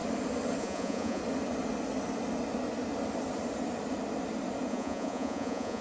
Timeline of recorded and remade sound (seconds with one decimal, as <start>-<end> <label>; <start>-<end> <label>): 0.0-0.6 recorded; 0.6-1.2 remade; 1.2-4.7 recorded; 4.7-5.8 remade